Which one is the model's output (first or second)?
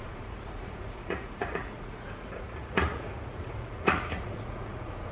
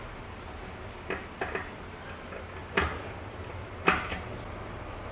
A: first